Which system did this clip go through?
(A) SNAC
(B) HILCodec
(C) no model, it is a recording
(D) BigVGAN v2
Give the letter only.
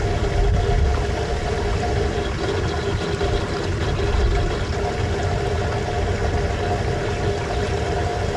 C